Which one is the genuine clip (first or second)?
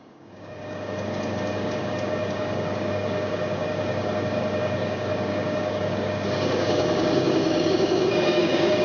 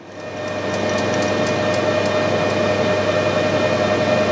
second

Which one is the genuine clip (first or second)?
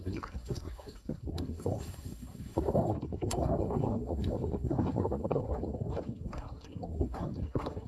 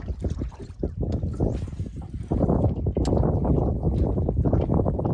second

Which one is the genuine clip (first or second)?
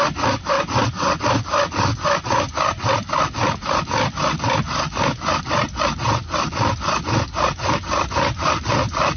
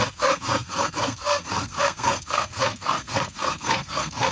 first